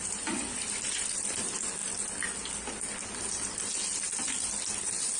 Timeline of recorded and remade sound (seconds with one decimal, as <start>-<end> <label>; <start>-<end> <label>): 0.0-1.8 remade; 1.8-5.2 recorded